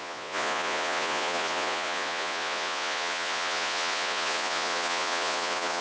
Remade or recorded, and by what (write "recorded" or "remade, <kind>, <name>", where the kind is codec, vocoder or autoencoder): remade, vocoder, Vocos